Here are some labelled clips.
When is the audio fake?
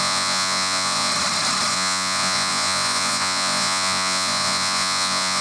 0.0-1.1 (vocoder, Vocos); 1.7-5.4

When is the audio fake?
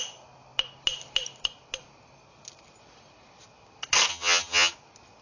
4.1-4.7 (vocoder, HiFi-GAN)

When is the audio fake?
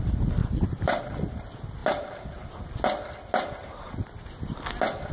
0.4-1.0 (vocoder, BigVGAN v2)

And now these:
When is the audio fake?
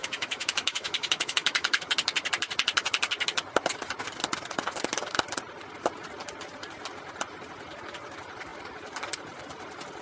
0.0-1.8 (autoencoder, DAC-VAE)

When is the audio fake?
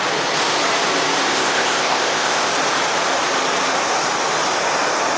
1.3-2.5 (codec, ZipCodec)